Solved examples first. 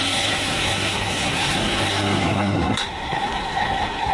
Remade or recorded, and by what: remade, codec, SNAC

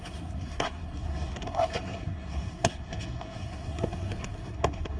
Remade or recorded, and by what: remade, codec, SNAC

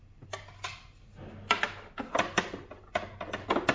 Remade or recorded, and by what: recorded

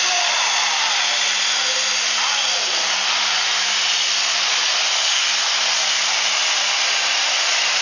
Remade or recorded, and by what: recorded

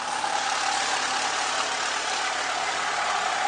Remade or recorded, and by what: recorded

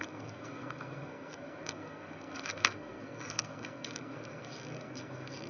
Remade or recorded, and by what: remade, codec, SNAC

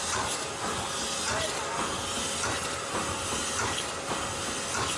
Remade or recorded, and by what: recorded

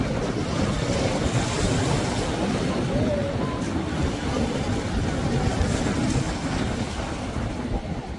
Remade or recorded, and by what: recorded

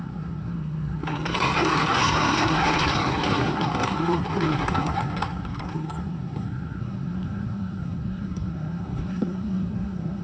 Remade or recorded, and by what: remade, codec, SNAC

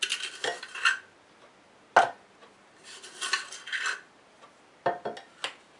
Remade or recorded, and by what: recorded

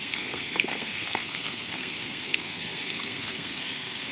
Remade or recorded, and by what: remade, codec, SNAC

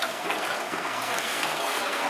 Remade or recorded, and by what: remade, codec, SNAC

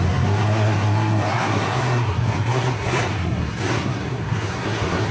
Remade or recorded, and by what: remade, codec, SNAC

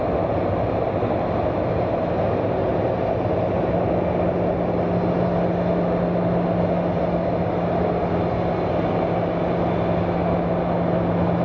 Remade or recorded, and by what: recorded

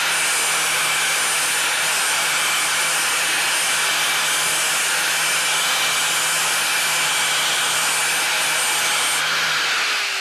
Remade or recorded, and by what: recorded